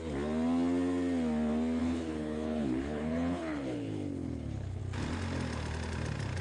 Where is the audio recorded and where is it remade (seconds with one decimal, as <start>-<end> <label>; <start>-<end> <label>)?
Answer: 0.0-1.8 recorded; 1.8-4.8 remade; 4.8-6.4 recorded